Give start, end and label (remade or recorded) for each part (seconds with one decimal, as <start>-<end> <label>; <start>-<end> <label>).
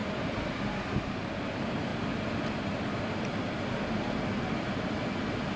0.0-1.9 remade; 1.9-5.6 recorded